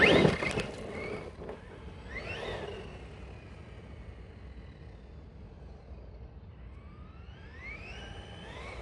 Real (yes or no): yes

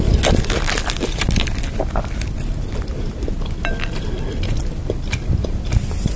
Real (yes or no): yes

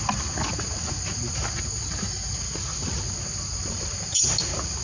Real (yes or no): yes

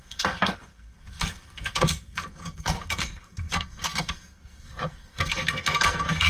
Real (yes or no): no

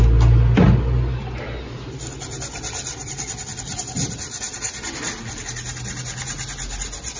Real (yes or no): yes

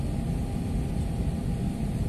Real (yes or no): yes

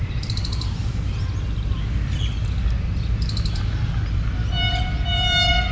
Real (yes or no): yes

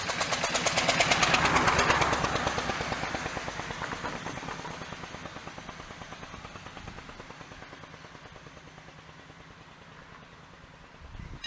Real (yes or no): yes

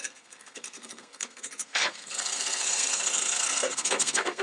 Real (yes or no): no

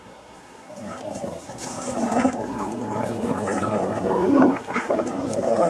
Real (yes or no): no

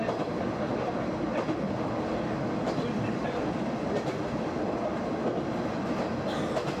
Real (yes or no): yes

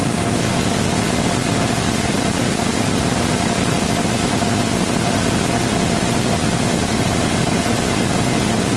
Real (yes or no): yes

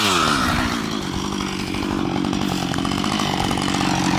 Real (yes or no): yes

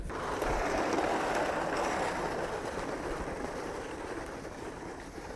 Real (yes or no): yes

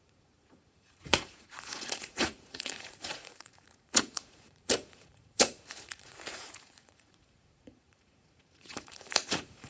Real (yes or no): no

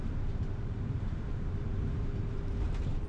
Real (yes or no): no